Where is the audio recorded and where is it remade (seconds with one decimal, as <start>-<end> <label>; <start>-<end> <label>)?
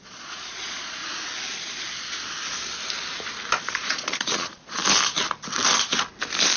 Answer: 0.0-1.0 remade; 1.0-3.6 recorded; 3.6-4.8 remade; 4.8-6.6 recorded